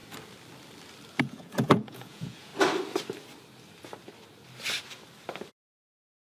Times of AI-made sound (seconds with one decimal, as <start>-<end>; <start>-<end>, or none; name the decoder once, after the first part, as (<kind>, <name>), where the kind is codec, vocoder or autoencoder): 1.2-2.5 (vocoder, Vocos)